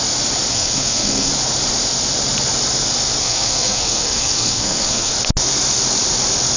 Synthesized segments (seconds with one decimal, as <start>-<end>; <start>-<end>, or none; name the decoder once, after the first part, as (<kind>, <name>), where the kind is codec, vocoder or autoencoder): 0.5-1.3 (codec, SNAC); 3.2-5.1